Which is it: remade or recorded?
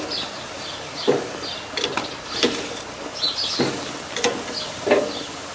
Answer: recorded